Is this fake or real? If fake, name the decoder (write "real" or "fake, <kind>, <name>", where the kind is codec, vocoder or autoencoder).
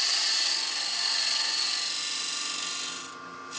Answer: real